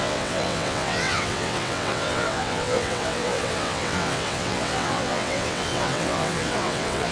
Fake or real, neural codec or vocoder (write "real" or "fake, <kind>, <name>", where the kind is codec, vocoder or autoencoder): fake, vocoder, WaveNeXt